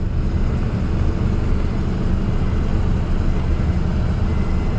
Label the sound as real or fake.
real